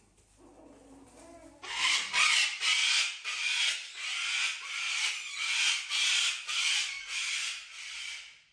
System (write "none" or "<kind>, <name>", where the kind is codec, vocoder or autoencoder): none